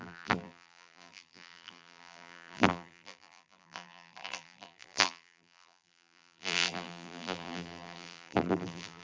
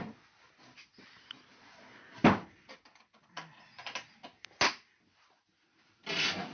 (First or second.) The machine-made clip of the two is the first